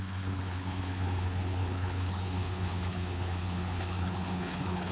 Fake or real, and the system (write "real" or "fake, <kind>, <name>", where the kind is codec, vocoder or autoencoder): fake, codec, HILCodec